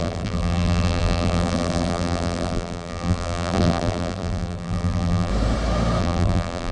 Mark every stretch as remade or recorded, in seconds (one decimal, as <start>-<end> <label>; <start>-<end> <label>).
0.0-5.3 remade; 5.3-6.0 recorded; 6.0-6.7 remade